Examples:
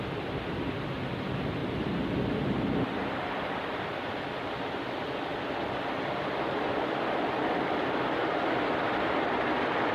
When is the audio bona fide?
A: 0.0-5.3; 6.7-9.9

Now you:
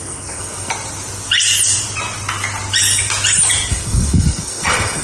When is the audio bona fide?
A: 0.7-3.7

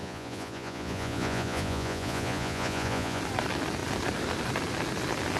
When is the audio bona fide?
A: 3.2-5.4

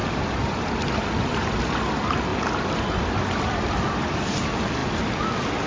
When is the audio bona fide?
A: 2.3-3.4

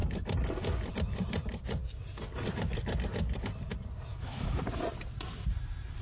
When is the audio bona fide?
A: 0.0-4.1; 4.6-6.0